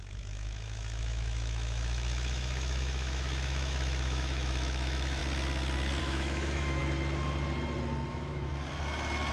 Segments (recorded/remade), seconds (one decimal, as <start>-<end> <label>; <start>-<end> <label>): 0.0-5.2 remade; 5.2-6.0 recorded; 6.0-6.8 remade; 6.8-8.1 recorded; 8.1-8.5 remade; 8.5-9.3 recorded